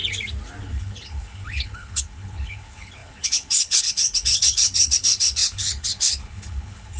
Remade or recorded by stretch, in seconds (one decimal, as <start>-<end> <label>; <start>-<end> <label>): 0.0-0.6 recorded; 0.6-7.0 remade